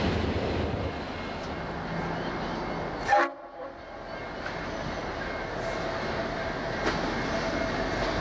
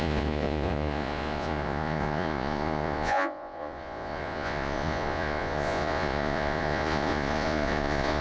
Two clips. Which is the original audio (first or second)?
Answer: first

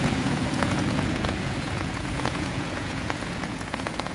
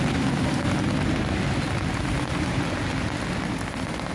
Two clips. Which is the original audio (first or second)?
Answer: second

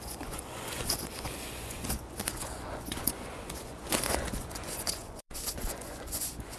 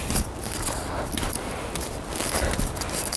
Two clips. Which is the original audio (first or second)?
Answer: second